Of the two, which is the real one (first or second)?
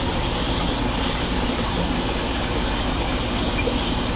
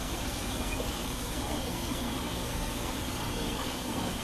first